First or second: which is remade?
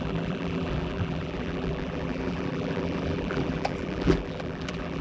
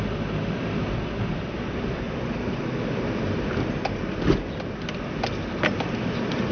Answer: first